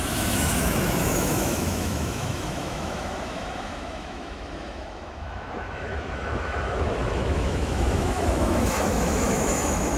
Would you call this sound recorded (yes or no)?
no